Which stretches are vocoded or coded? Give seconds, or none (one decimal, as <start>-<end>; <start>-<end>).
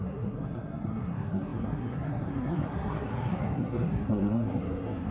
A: 0.0-5.1